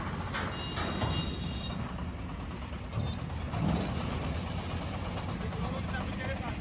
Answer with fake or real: real